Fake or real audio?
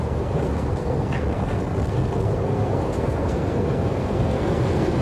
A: fake